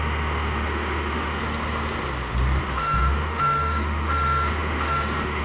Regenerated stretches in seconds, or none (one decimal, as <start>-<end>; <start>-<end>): 0.0-1.4; 2.6-5.4